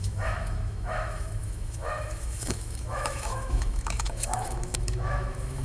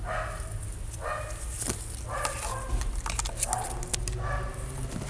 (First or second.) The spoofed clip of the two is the first